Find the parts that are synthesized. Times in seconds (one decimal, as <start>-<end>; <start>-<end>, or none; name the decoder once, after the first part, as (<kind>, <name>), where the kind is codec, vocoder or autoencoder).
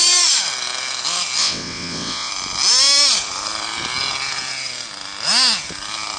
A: 1.4-2.3 (vocoder, WaveNeXt)